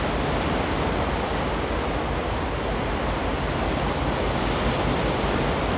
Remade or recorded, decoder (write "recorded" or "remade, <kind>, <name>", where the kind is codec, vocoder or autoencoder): recorded